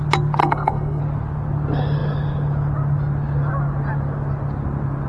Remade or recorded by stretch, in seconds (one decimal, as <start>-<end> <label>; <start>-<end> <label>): 0.0-0.4 recorded; 0.4-1.0 remade; 1.0-5.1 recorded